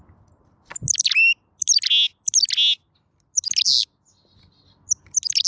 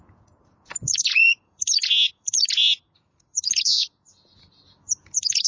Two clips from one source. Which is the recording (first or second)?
first